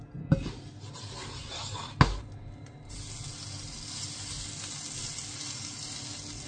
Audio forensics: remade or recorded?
recorded